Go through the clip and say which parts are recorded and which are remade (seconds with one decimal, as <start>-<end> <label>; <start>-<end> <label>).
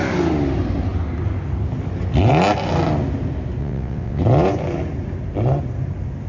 0.0-3.6 recorded; 3.6-4.2 remade; 4.2-6.3 recorded